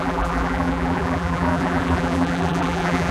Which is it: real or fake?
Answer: fake